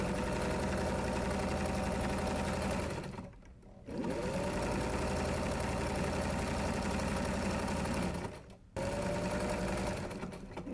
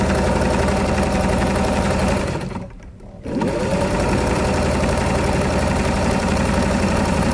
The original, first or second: first